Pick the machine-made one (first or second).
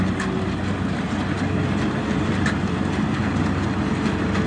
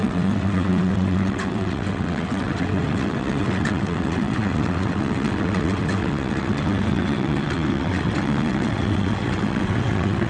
second